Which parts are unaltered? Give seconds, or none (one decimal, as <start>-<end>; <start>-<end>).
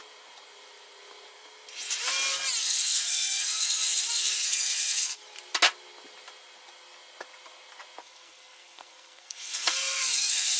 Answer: 0.0-2.6; 5.2-8.0